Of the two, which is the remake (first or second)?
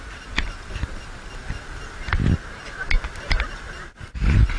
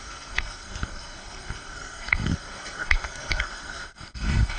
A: second